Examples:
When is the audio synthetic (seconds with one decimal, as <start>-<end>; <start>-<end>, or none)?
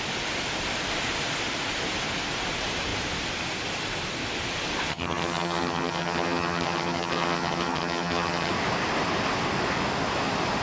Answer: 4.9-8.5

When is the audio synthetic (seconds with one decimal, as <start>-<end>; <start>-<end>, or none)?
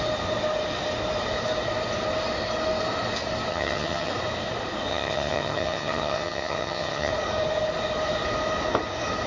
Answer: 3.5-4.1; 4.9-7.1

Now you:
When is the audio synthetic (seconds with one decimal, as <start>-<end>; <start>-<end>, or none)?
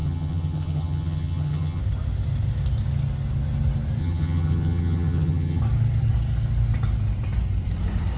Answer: 0.0-1.8; 4.0-5.6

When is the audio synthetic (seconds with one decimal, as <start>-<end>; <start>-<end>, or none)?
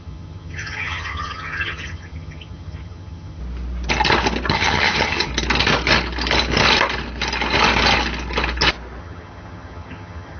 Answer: 0.0-3.4; 4.5-5.3; 9.0-10.4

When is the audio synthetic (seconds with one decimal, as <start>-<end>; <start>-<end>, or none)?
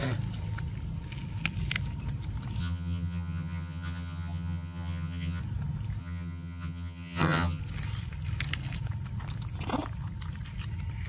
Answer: 2.6-5.4; 6.0-7.6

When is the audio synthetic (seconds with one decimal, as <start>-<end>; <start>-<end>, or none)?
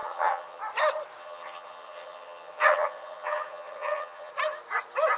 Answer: 0.0-0.6; 1.2-4.3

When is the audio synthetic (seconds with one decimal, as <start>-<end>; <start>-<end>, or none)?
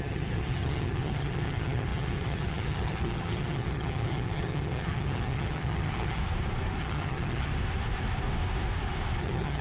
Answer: 0.0-6.2; 6.8-7.5; 9.2-9.6